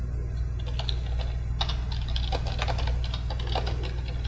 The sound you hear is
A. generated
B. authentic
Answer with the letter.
B